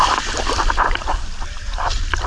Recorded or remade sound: remade